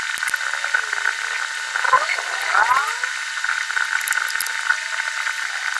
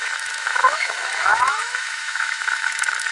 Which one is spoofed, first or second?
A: second